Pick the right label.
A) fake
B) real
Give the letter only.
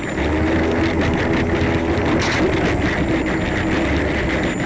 B